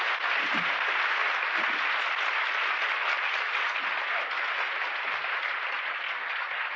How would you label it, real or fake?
real